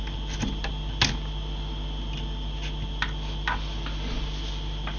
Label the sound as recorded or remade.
recorded